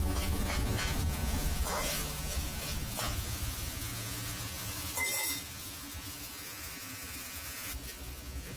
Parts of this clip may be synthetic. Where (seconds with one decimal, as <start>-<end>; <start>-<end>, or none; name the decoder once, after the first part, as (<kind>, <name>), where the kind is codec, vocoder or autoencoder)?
0.0-8.6 (vocoder, Vocos)